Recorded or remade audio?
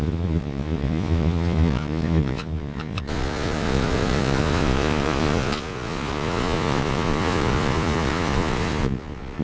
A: remade